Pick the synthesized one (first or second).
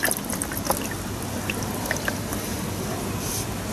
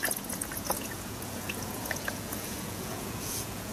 second